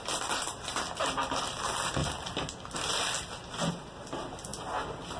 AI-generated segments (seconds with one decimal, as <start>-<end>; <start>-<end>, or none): none